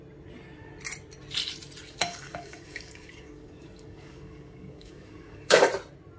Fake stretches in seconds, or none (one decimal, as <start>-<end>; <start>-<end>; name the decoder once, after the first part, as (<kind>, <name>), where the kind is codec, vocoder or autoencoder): 2.0-5.7 (codec, DAC)

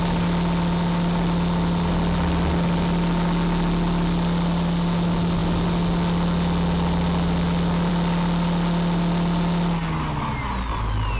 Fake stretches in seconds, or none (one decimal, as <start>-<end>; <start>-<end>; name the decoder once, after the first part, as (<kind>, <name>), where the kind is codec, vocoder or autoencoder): none